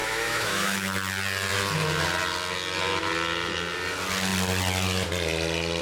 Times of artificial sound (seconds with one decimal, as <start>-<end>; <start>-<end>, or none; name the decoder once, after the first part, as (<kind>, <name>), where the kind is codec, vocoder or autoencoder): 0.0-0.9 (autoencoder, DAC-VAE)